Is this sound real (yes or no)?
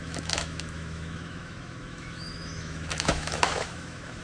no